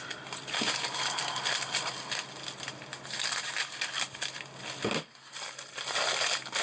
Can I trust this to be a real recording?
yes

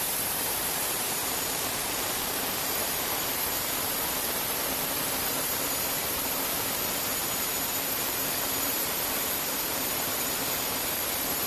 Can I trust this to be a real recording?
no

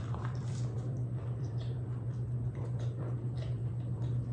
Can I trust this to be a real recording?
no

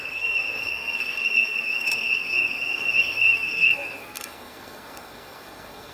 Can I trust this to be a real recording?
no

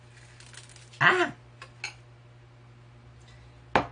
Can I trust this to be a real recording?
yes